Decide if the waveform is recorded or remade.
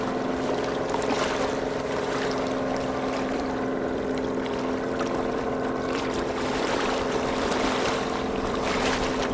remade